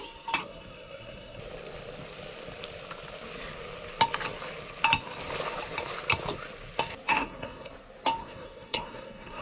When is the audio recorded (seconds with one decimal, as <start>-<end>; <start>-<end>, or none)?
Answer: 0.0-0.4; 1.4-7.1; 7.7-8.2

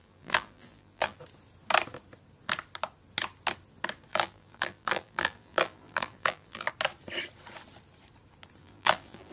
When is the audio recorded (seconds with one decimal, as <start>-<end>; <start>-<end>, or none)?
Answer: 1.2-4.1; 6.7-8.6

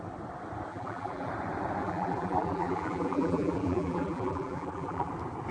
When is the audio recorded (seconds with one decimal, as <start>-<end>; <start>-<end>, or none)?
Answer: 0.0-0.7; 1.3-1.8; 5.1-5.5